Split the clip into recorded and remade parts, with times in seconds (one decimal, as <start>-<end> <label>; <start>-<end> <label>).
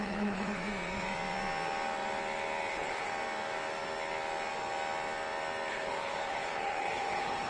0.0-0.6 remade; 0.6-2.7 recorded; 2.7-3.1 remade; 3.1-5.7 recorded; 5.7-7.5 remade